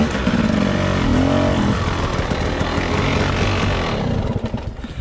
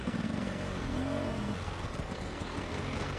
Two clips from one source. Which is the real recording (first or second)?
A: first